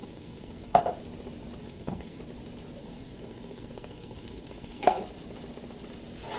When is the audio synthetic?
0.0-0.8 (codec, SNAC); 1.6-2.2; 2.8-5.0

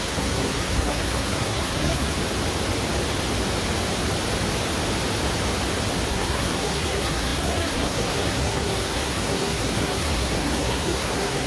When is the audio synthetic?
0.0-2.2 (codec, SNAC); 6.1-11.5

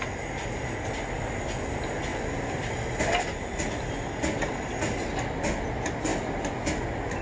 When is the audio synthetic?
2.1-3.4 (vocoder, BigVGAN v2)

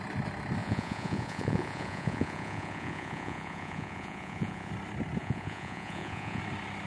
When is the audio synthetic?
0.6-4.7 (vocoder, Vocos); 5.2-6.4

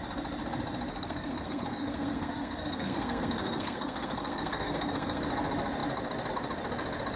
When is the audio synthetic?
0.9-5.2 (codec, SNAC)